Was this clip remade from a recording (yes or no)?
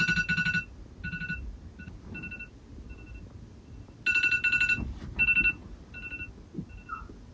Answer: no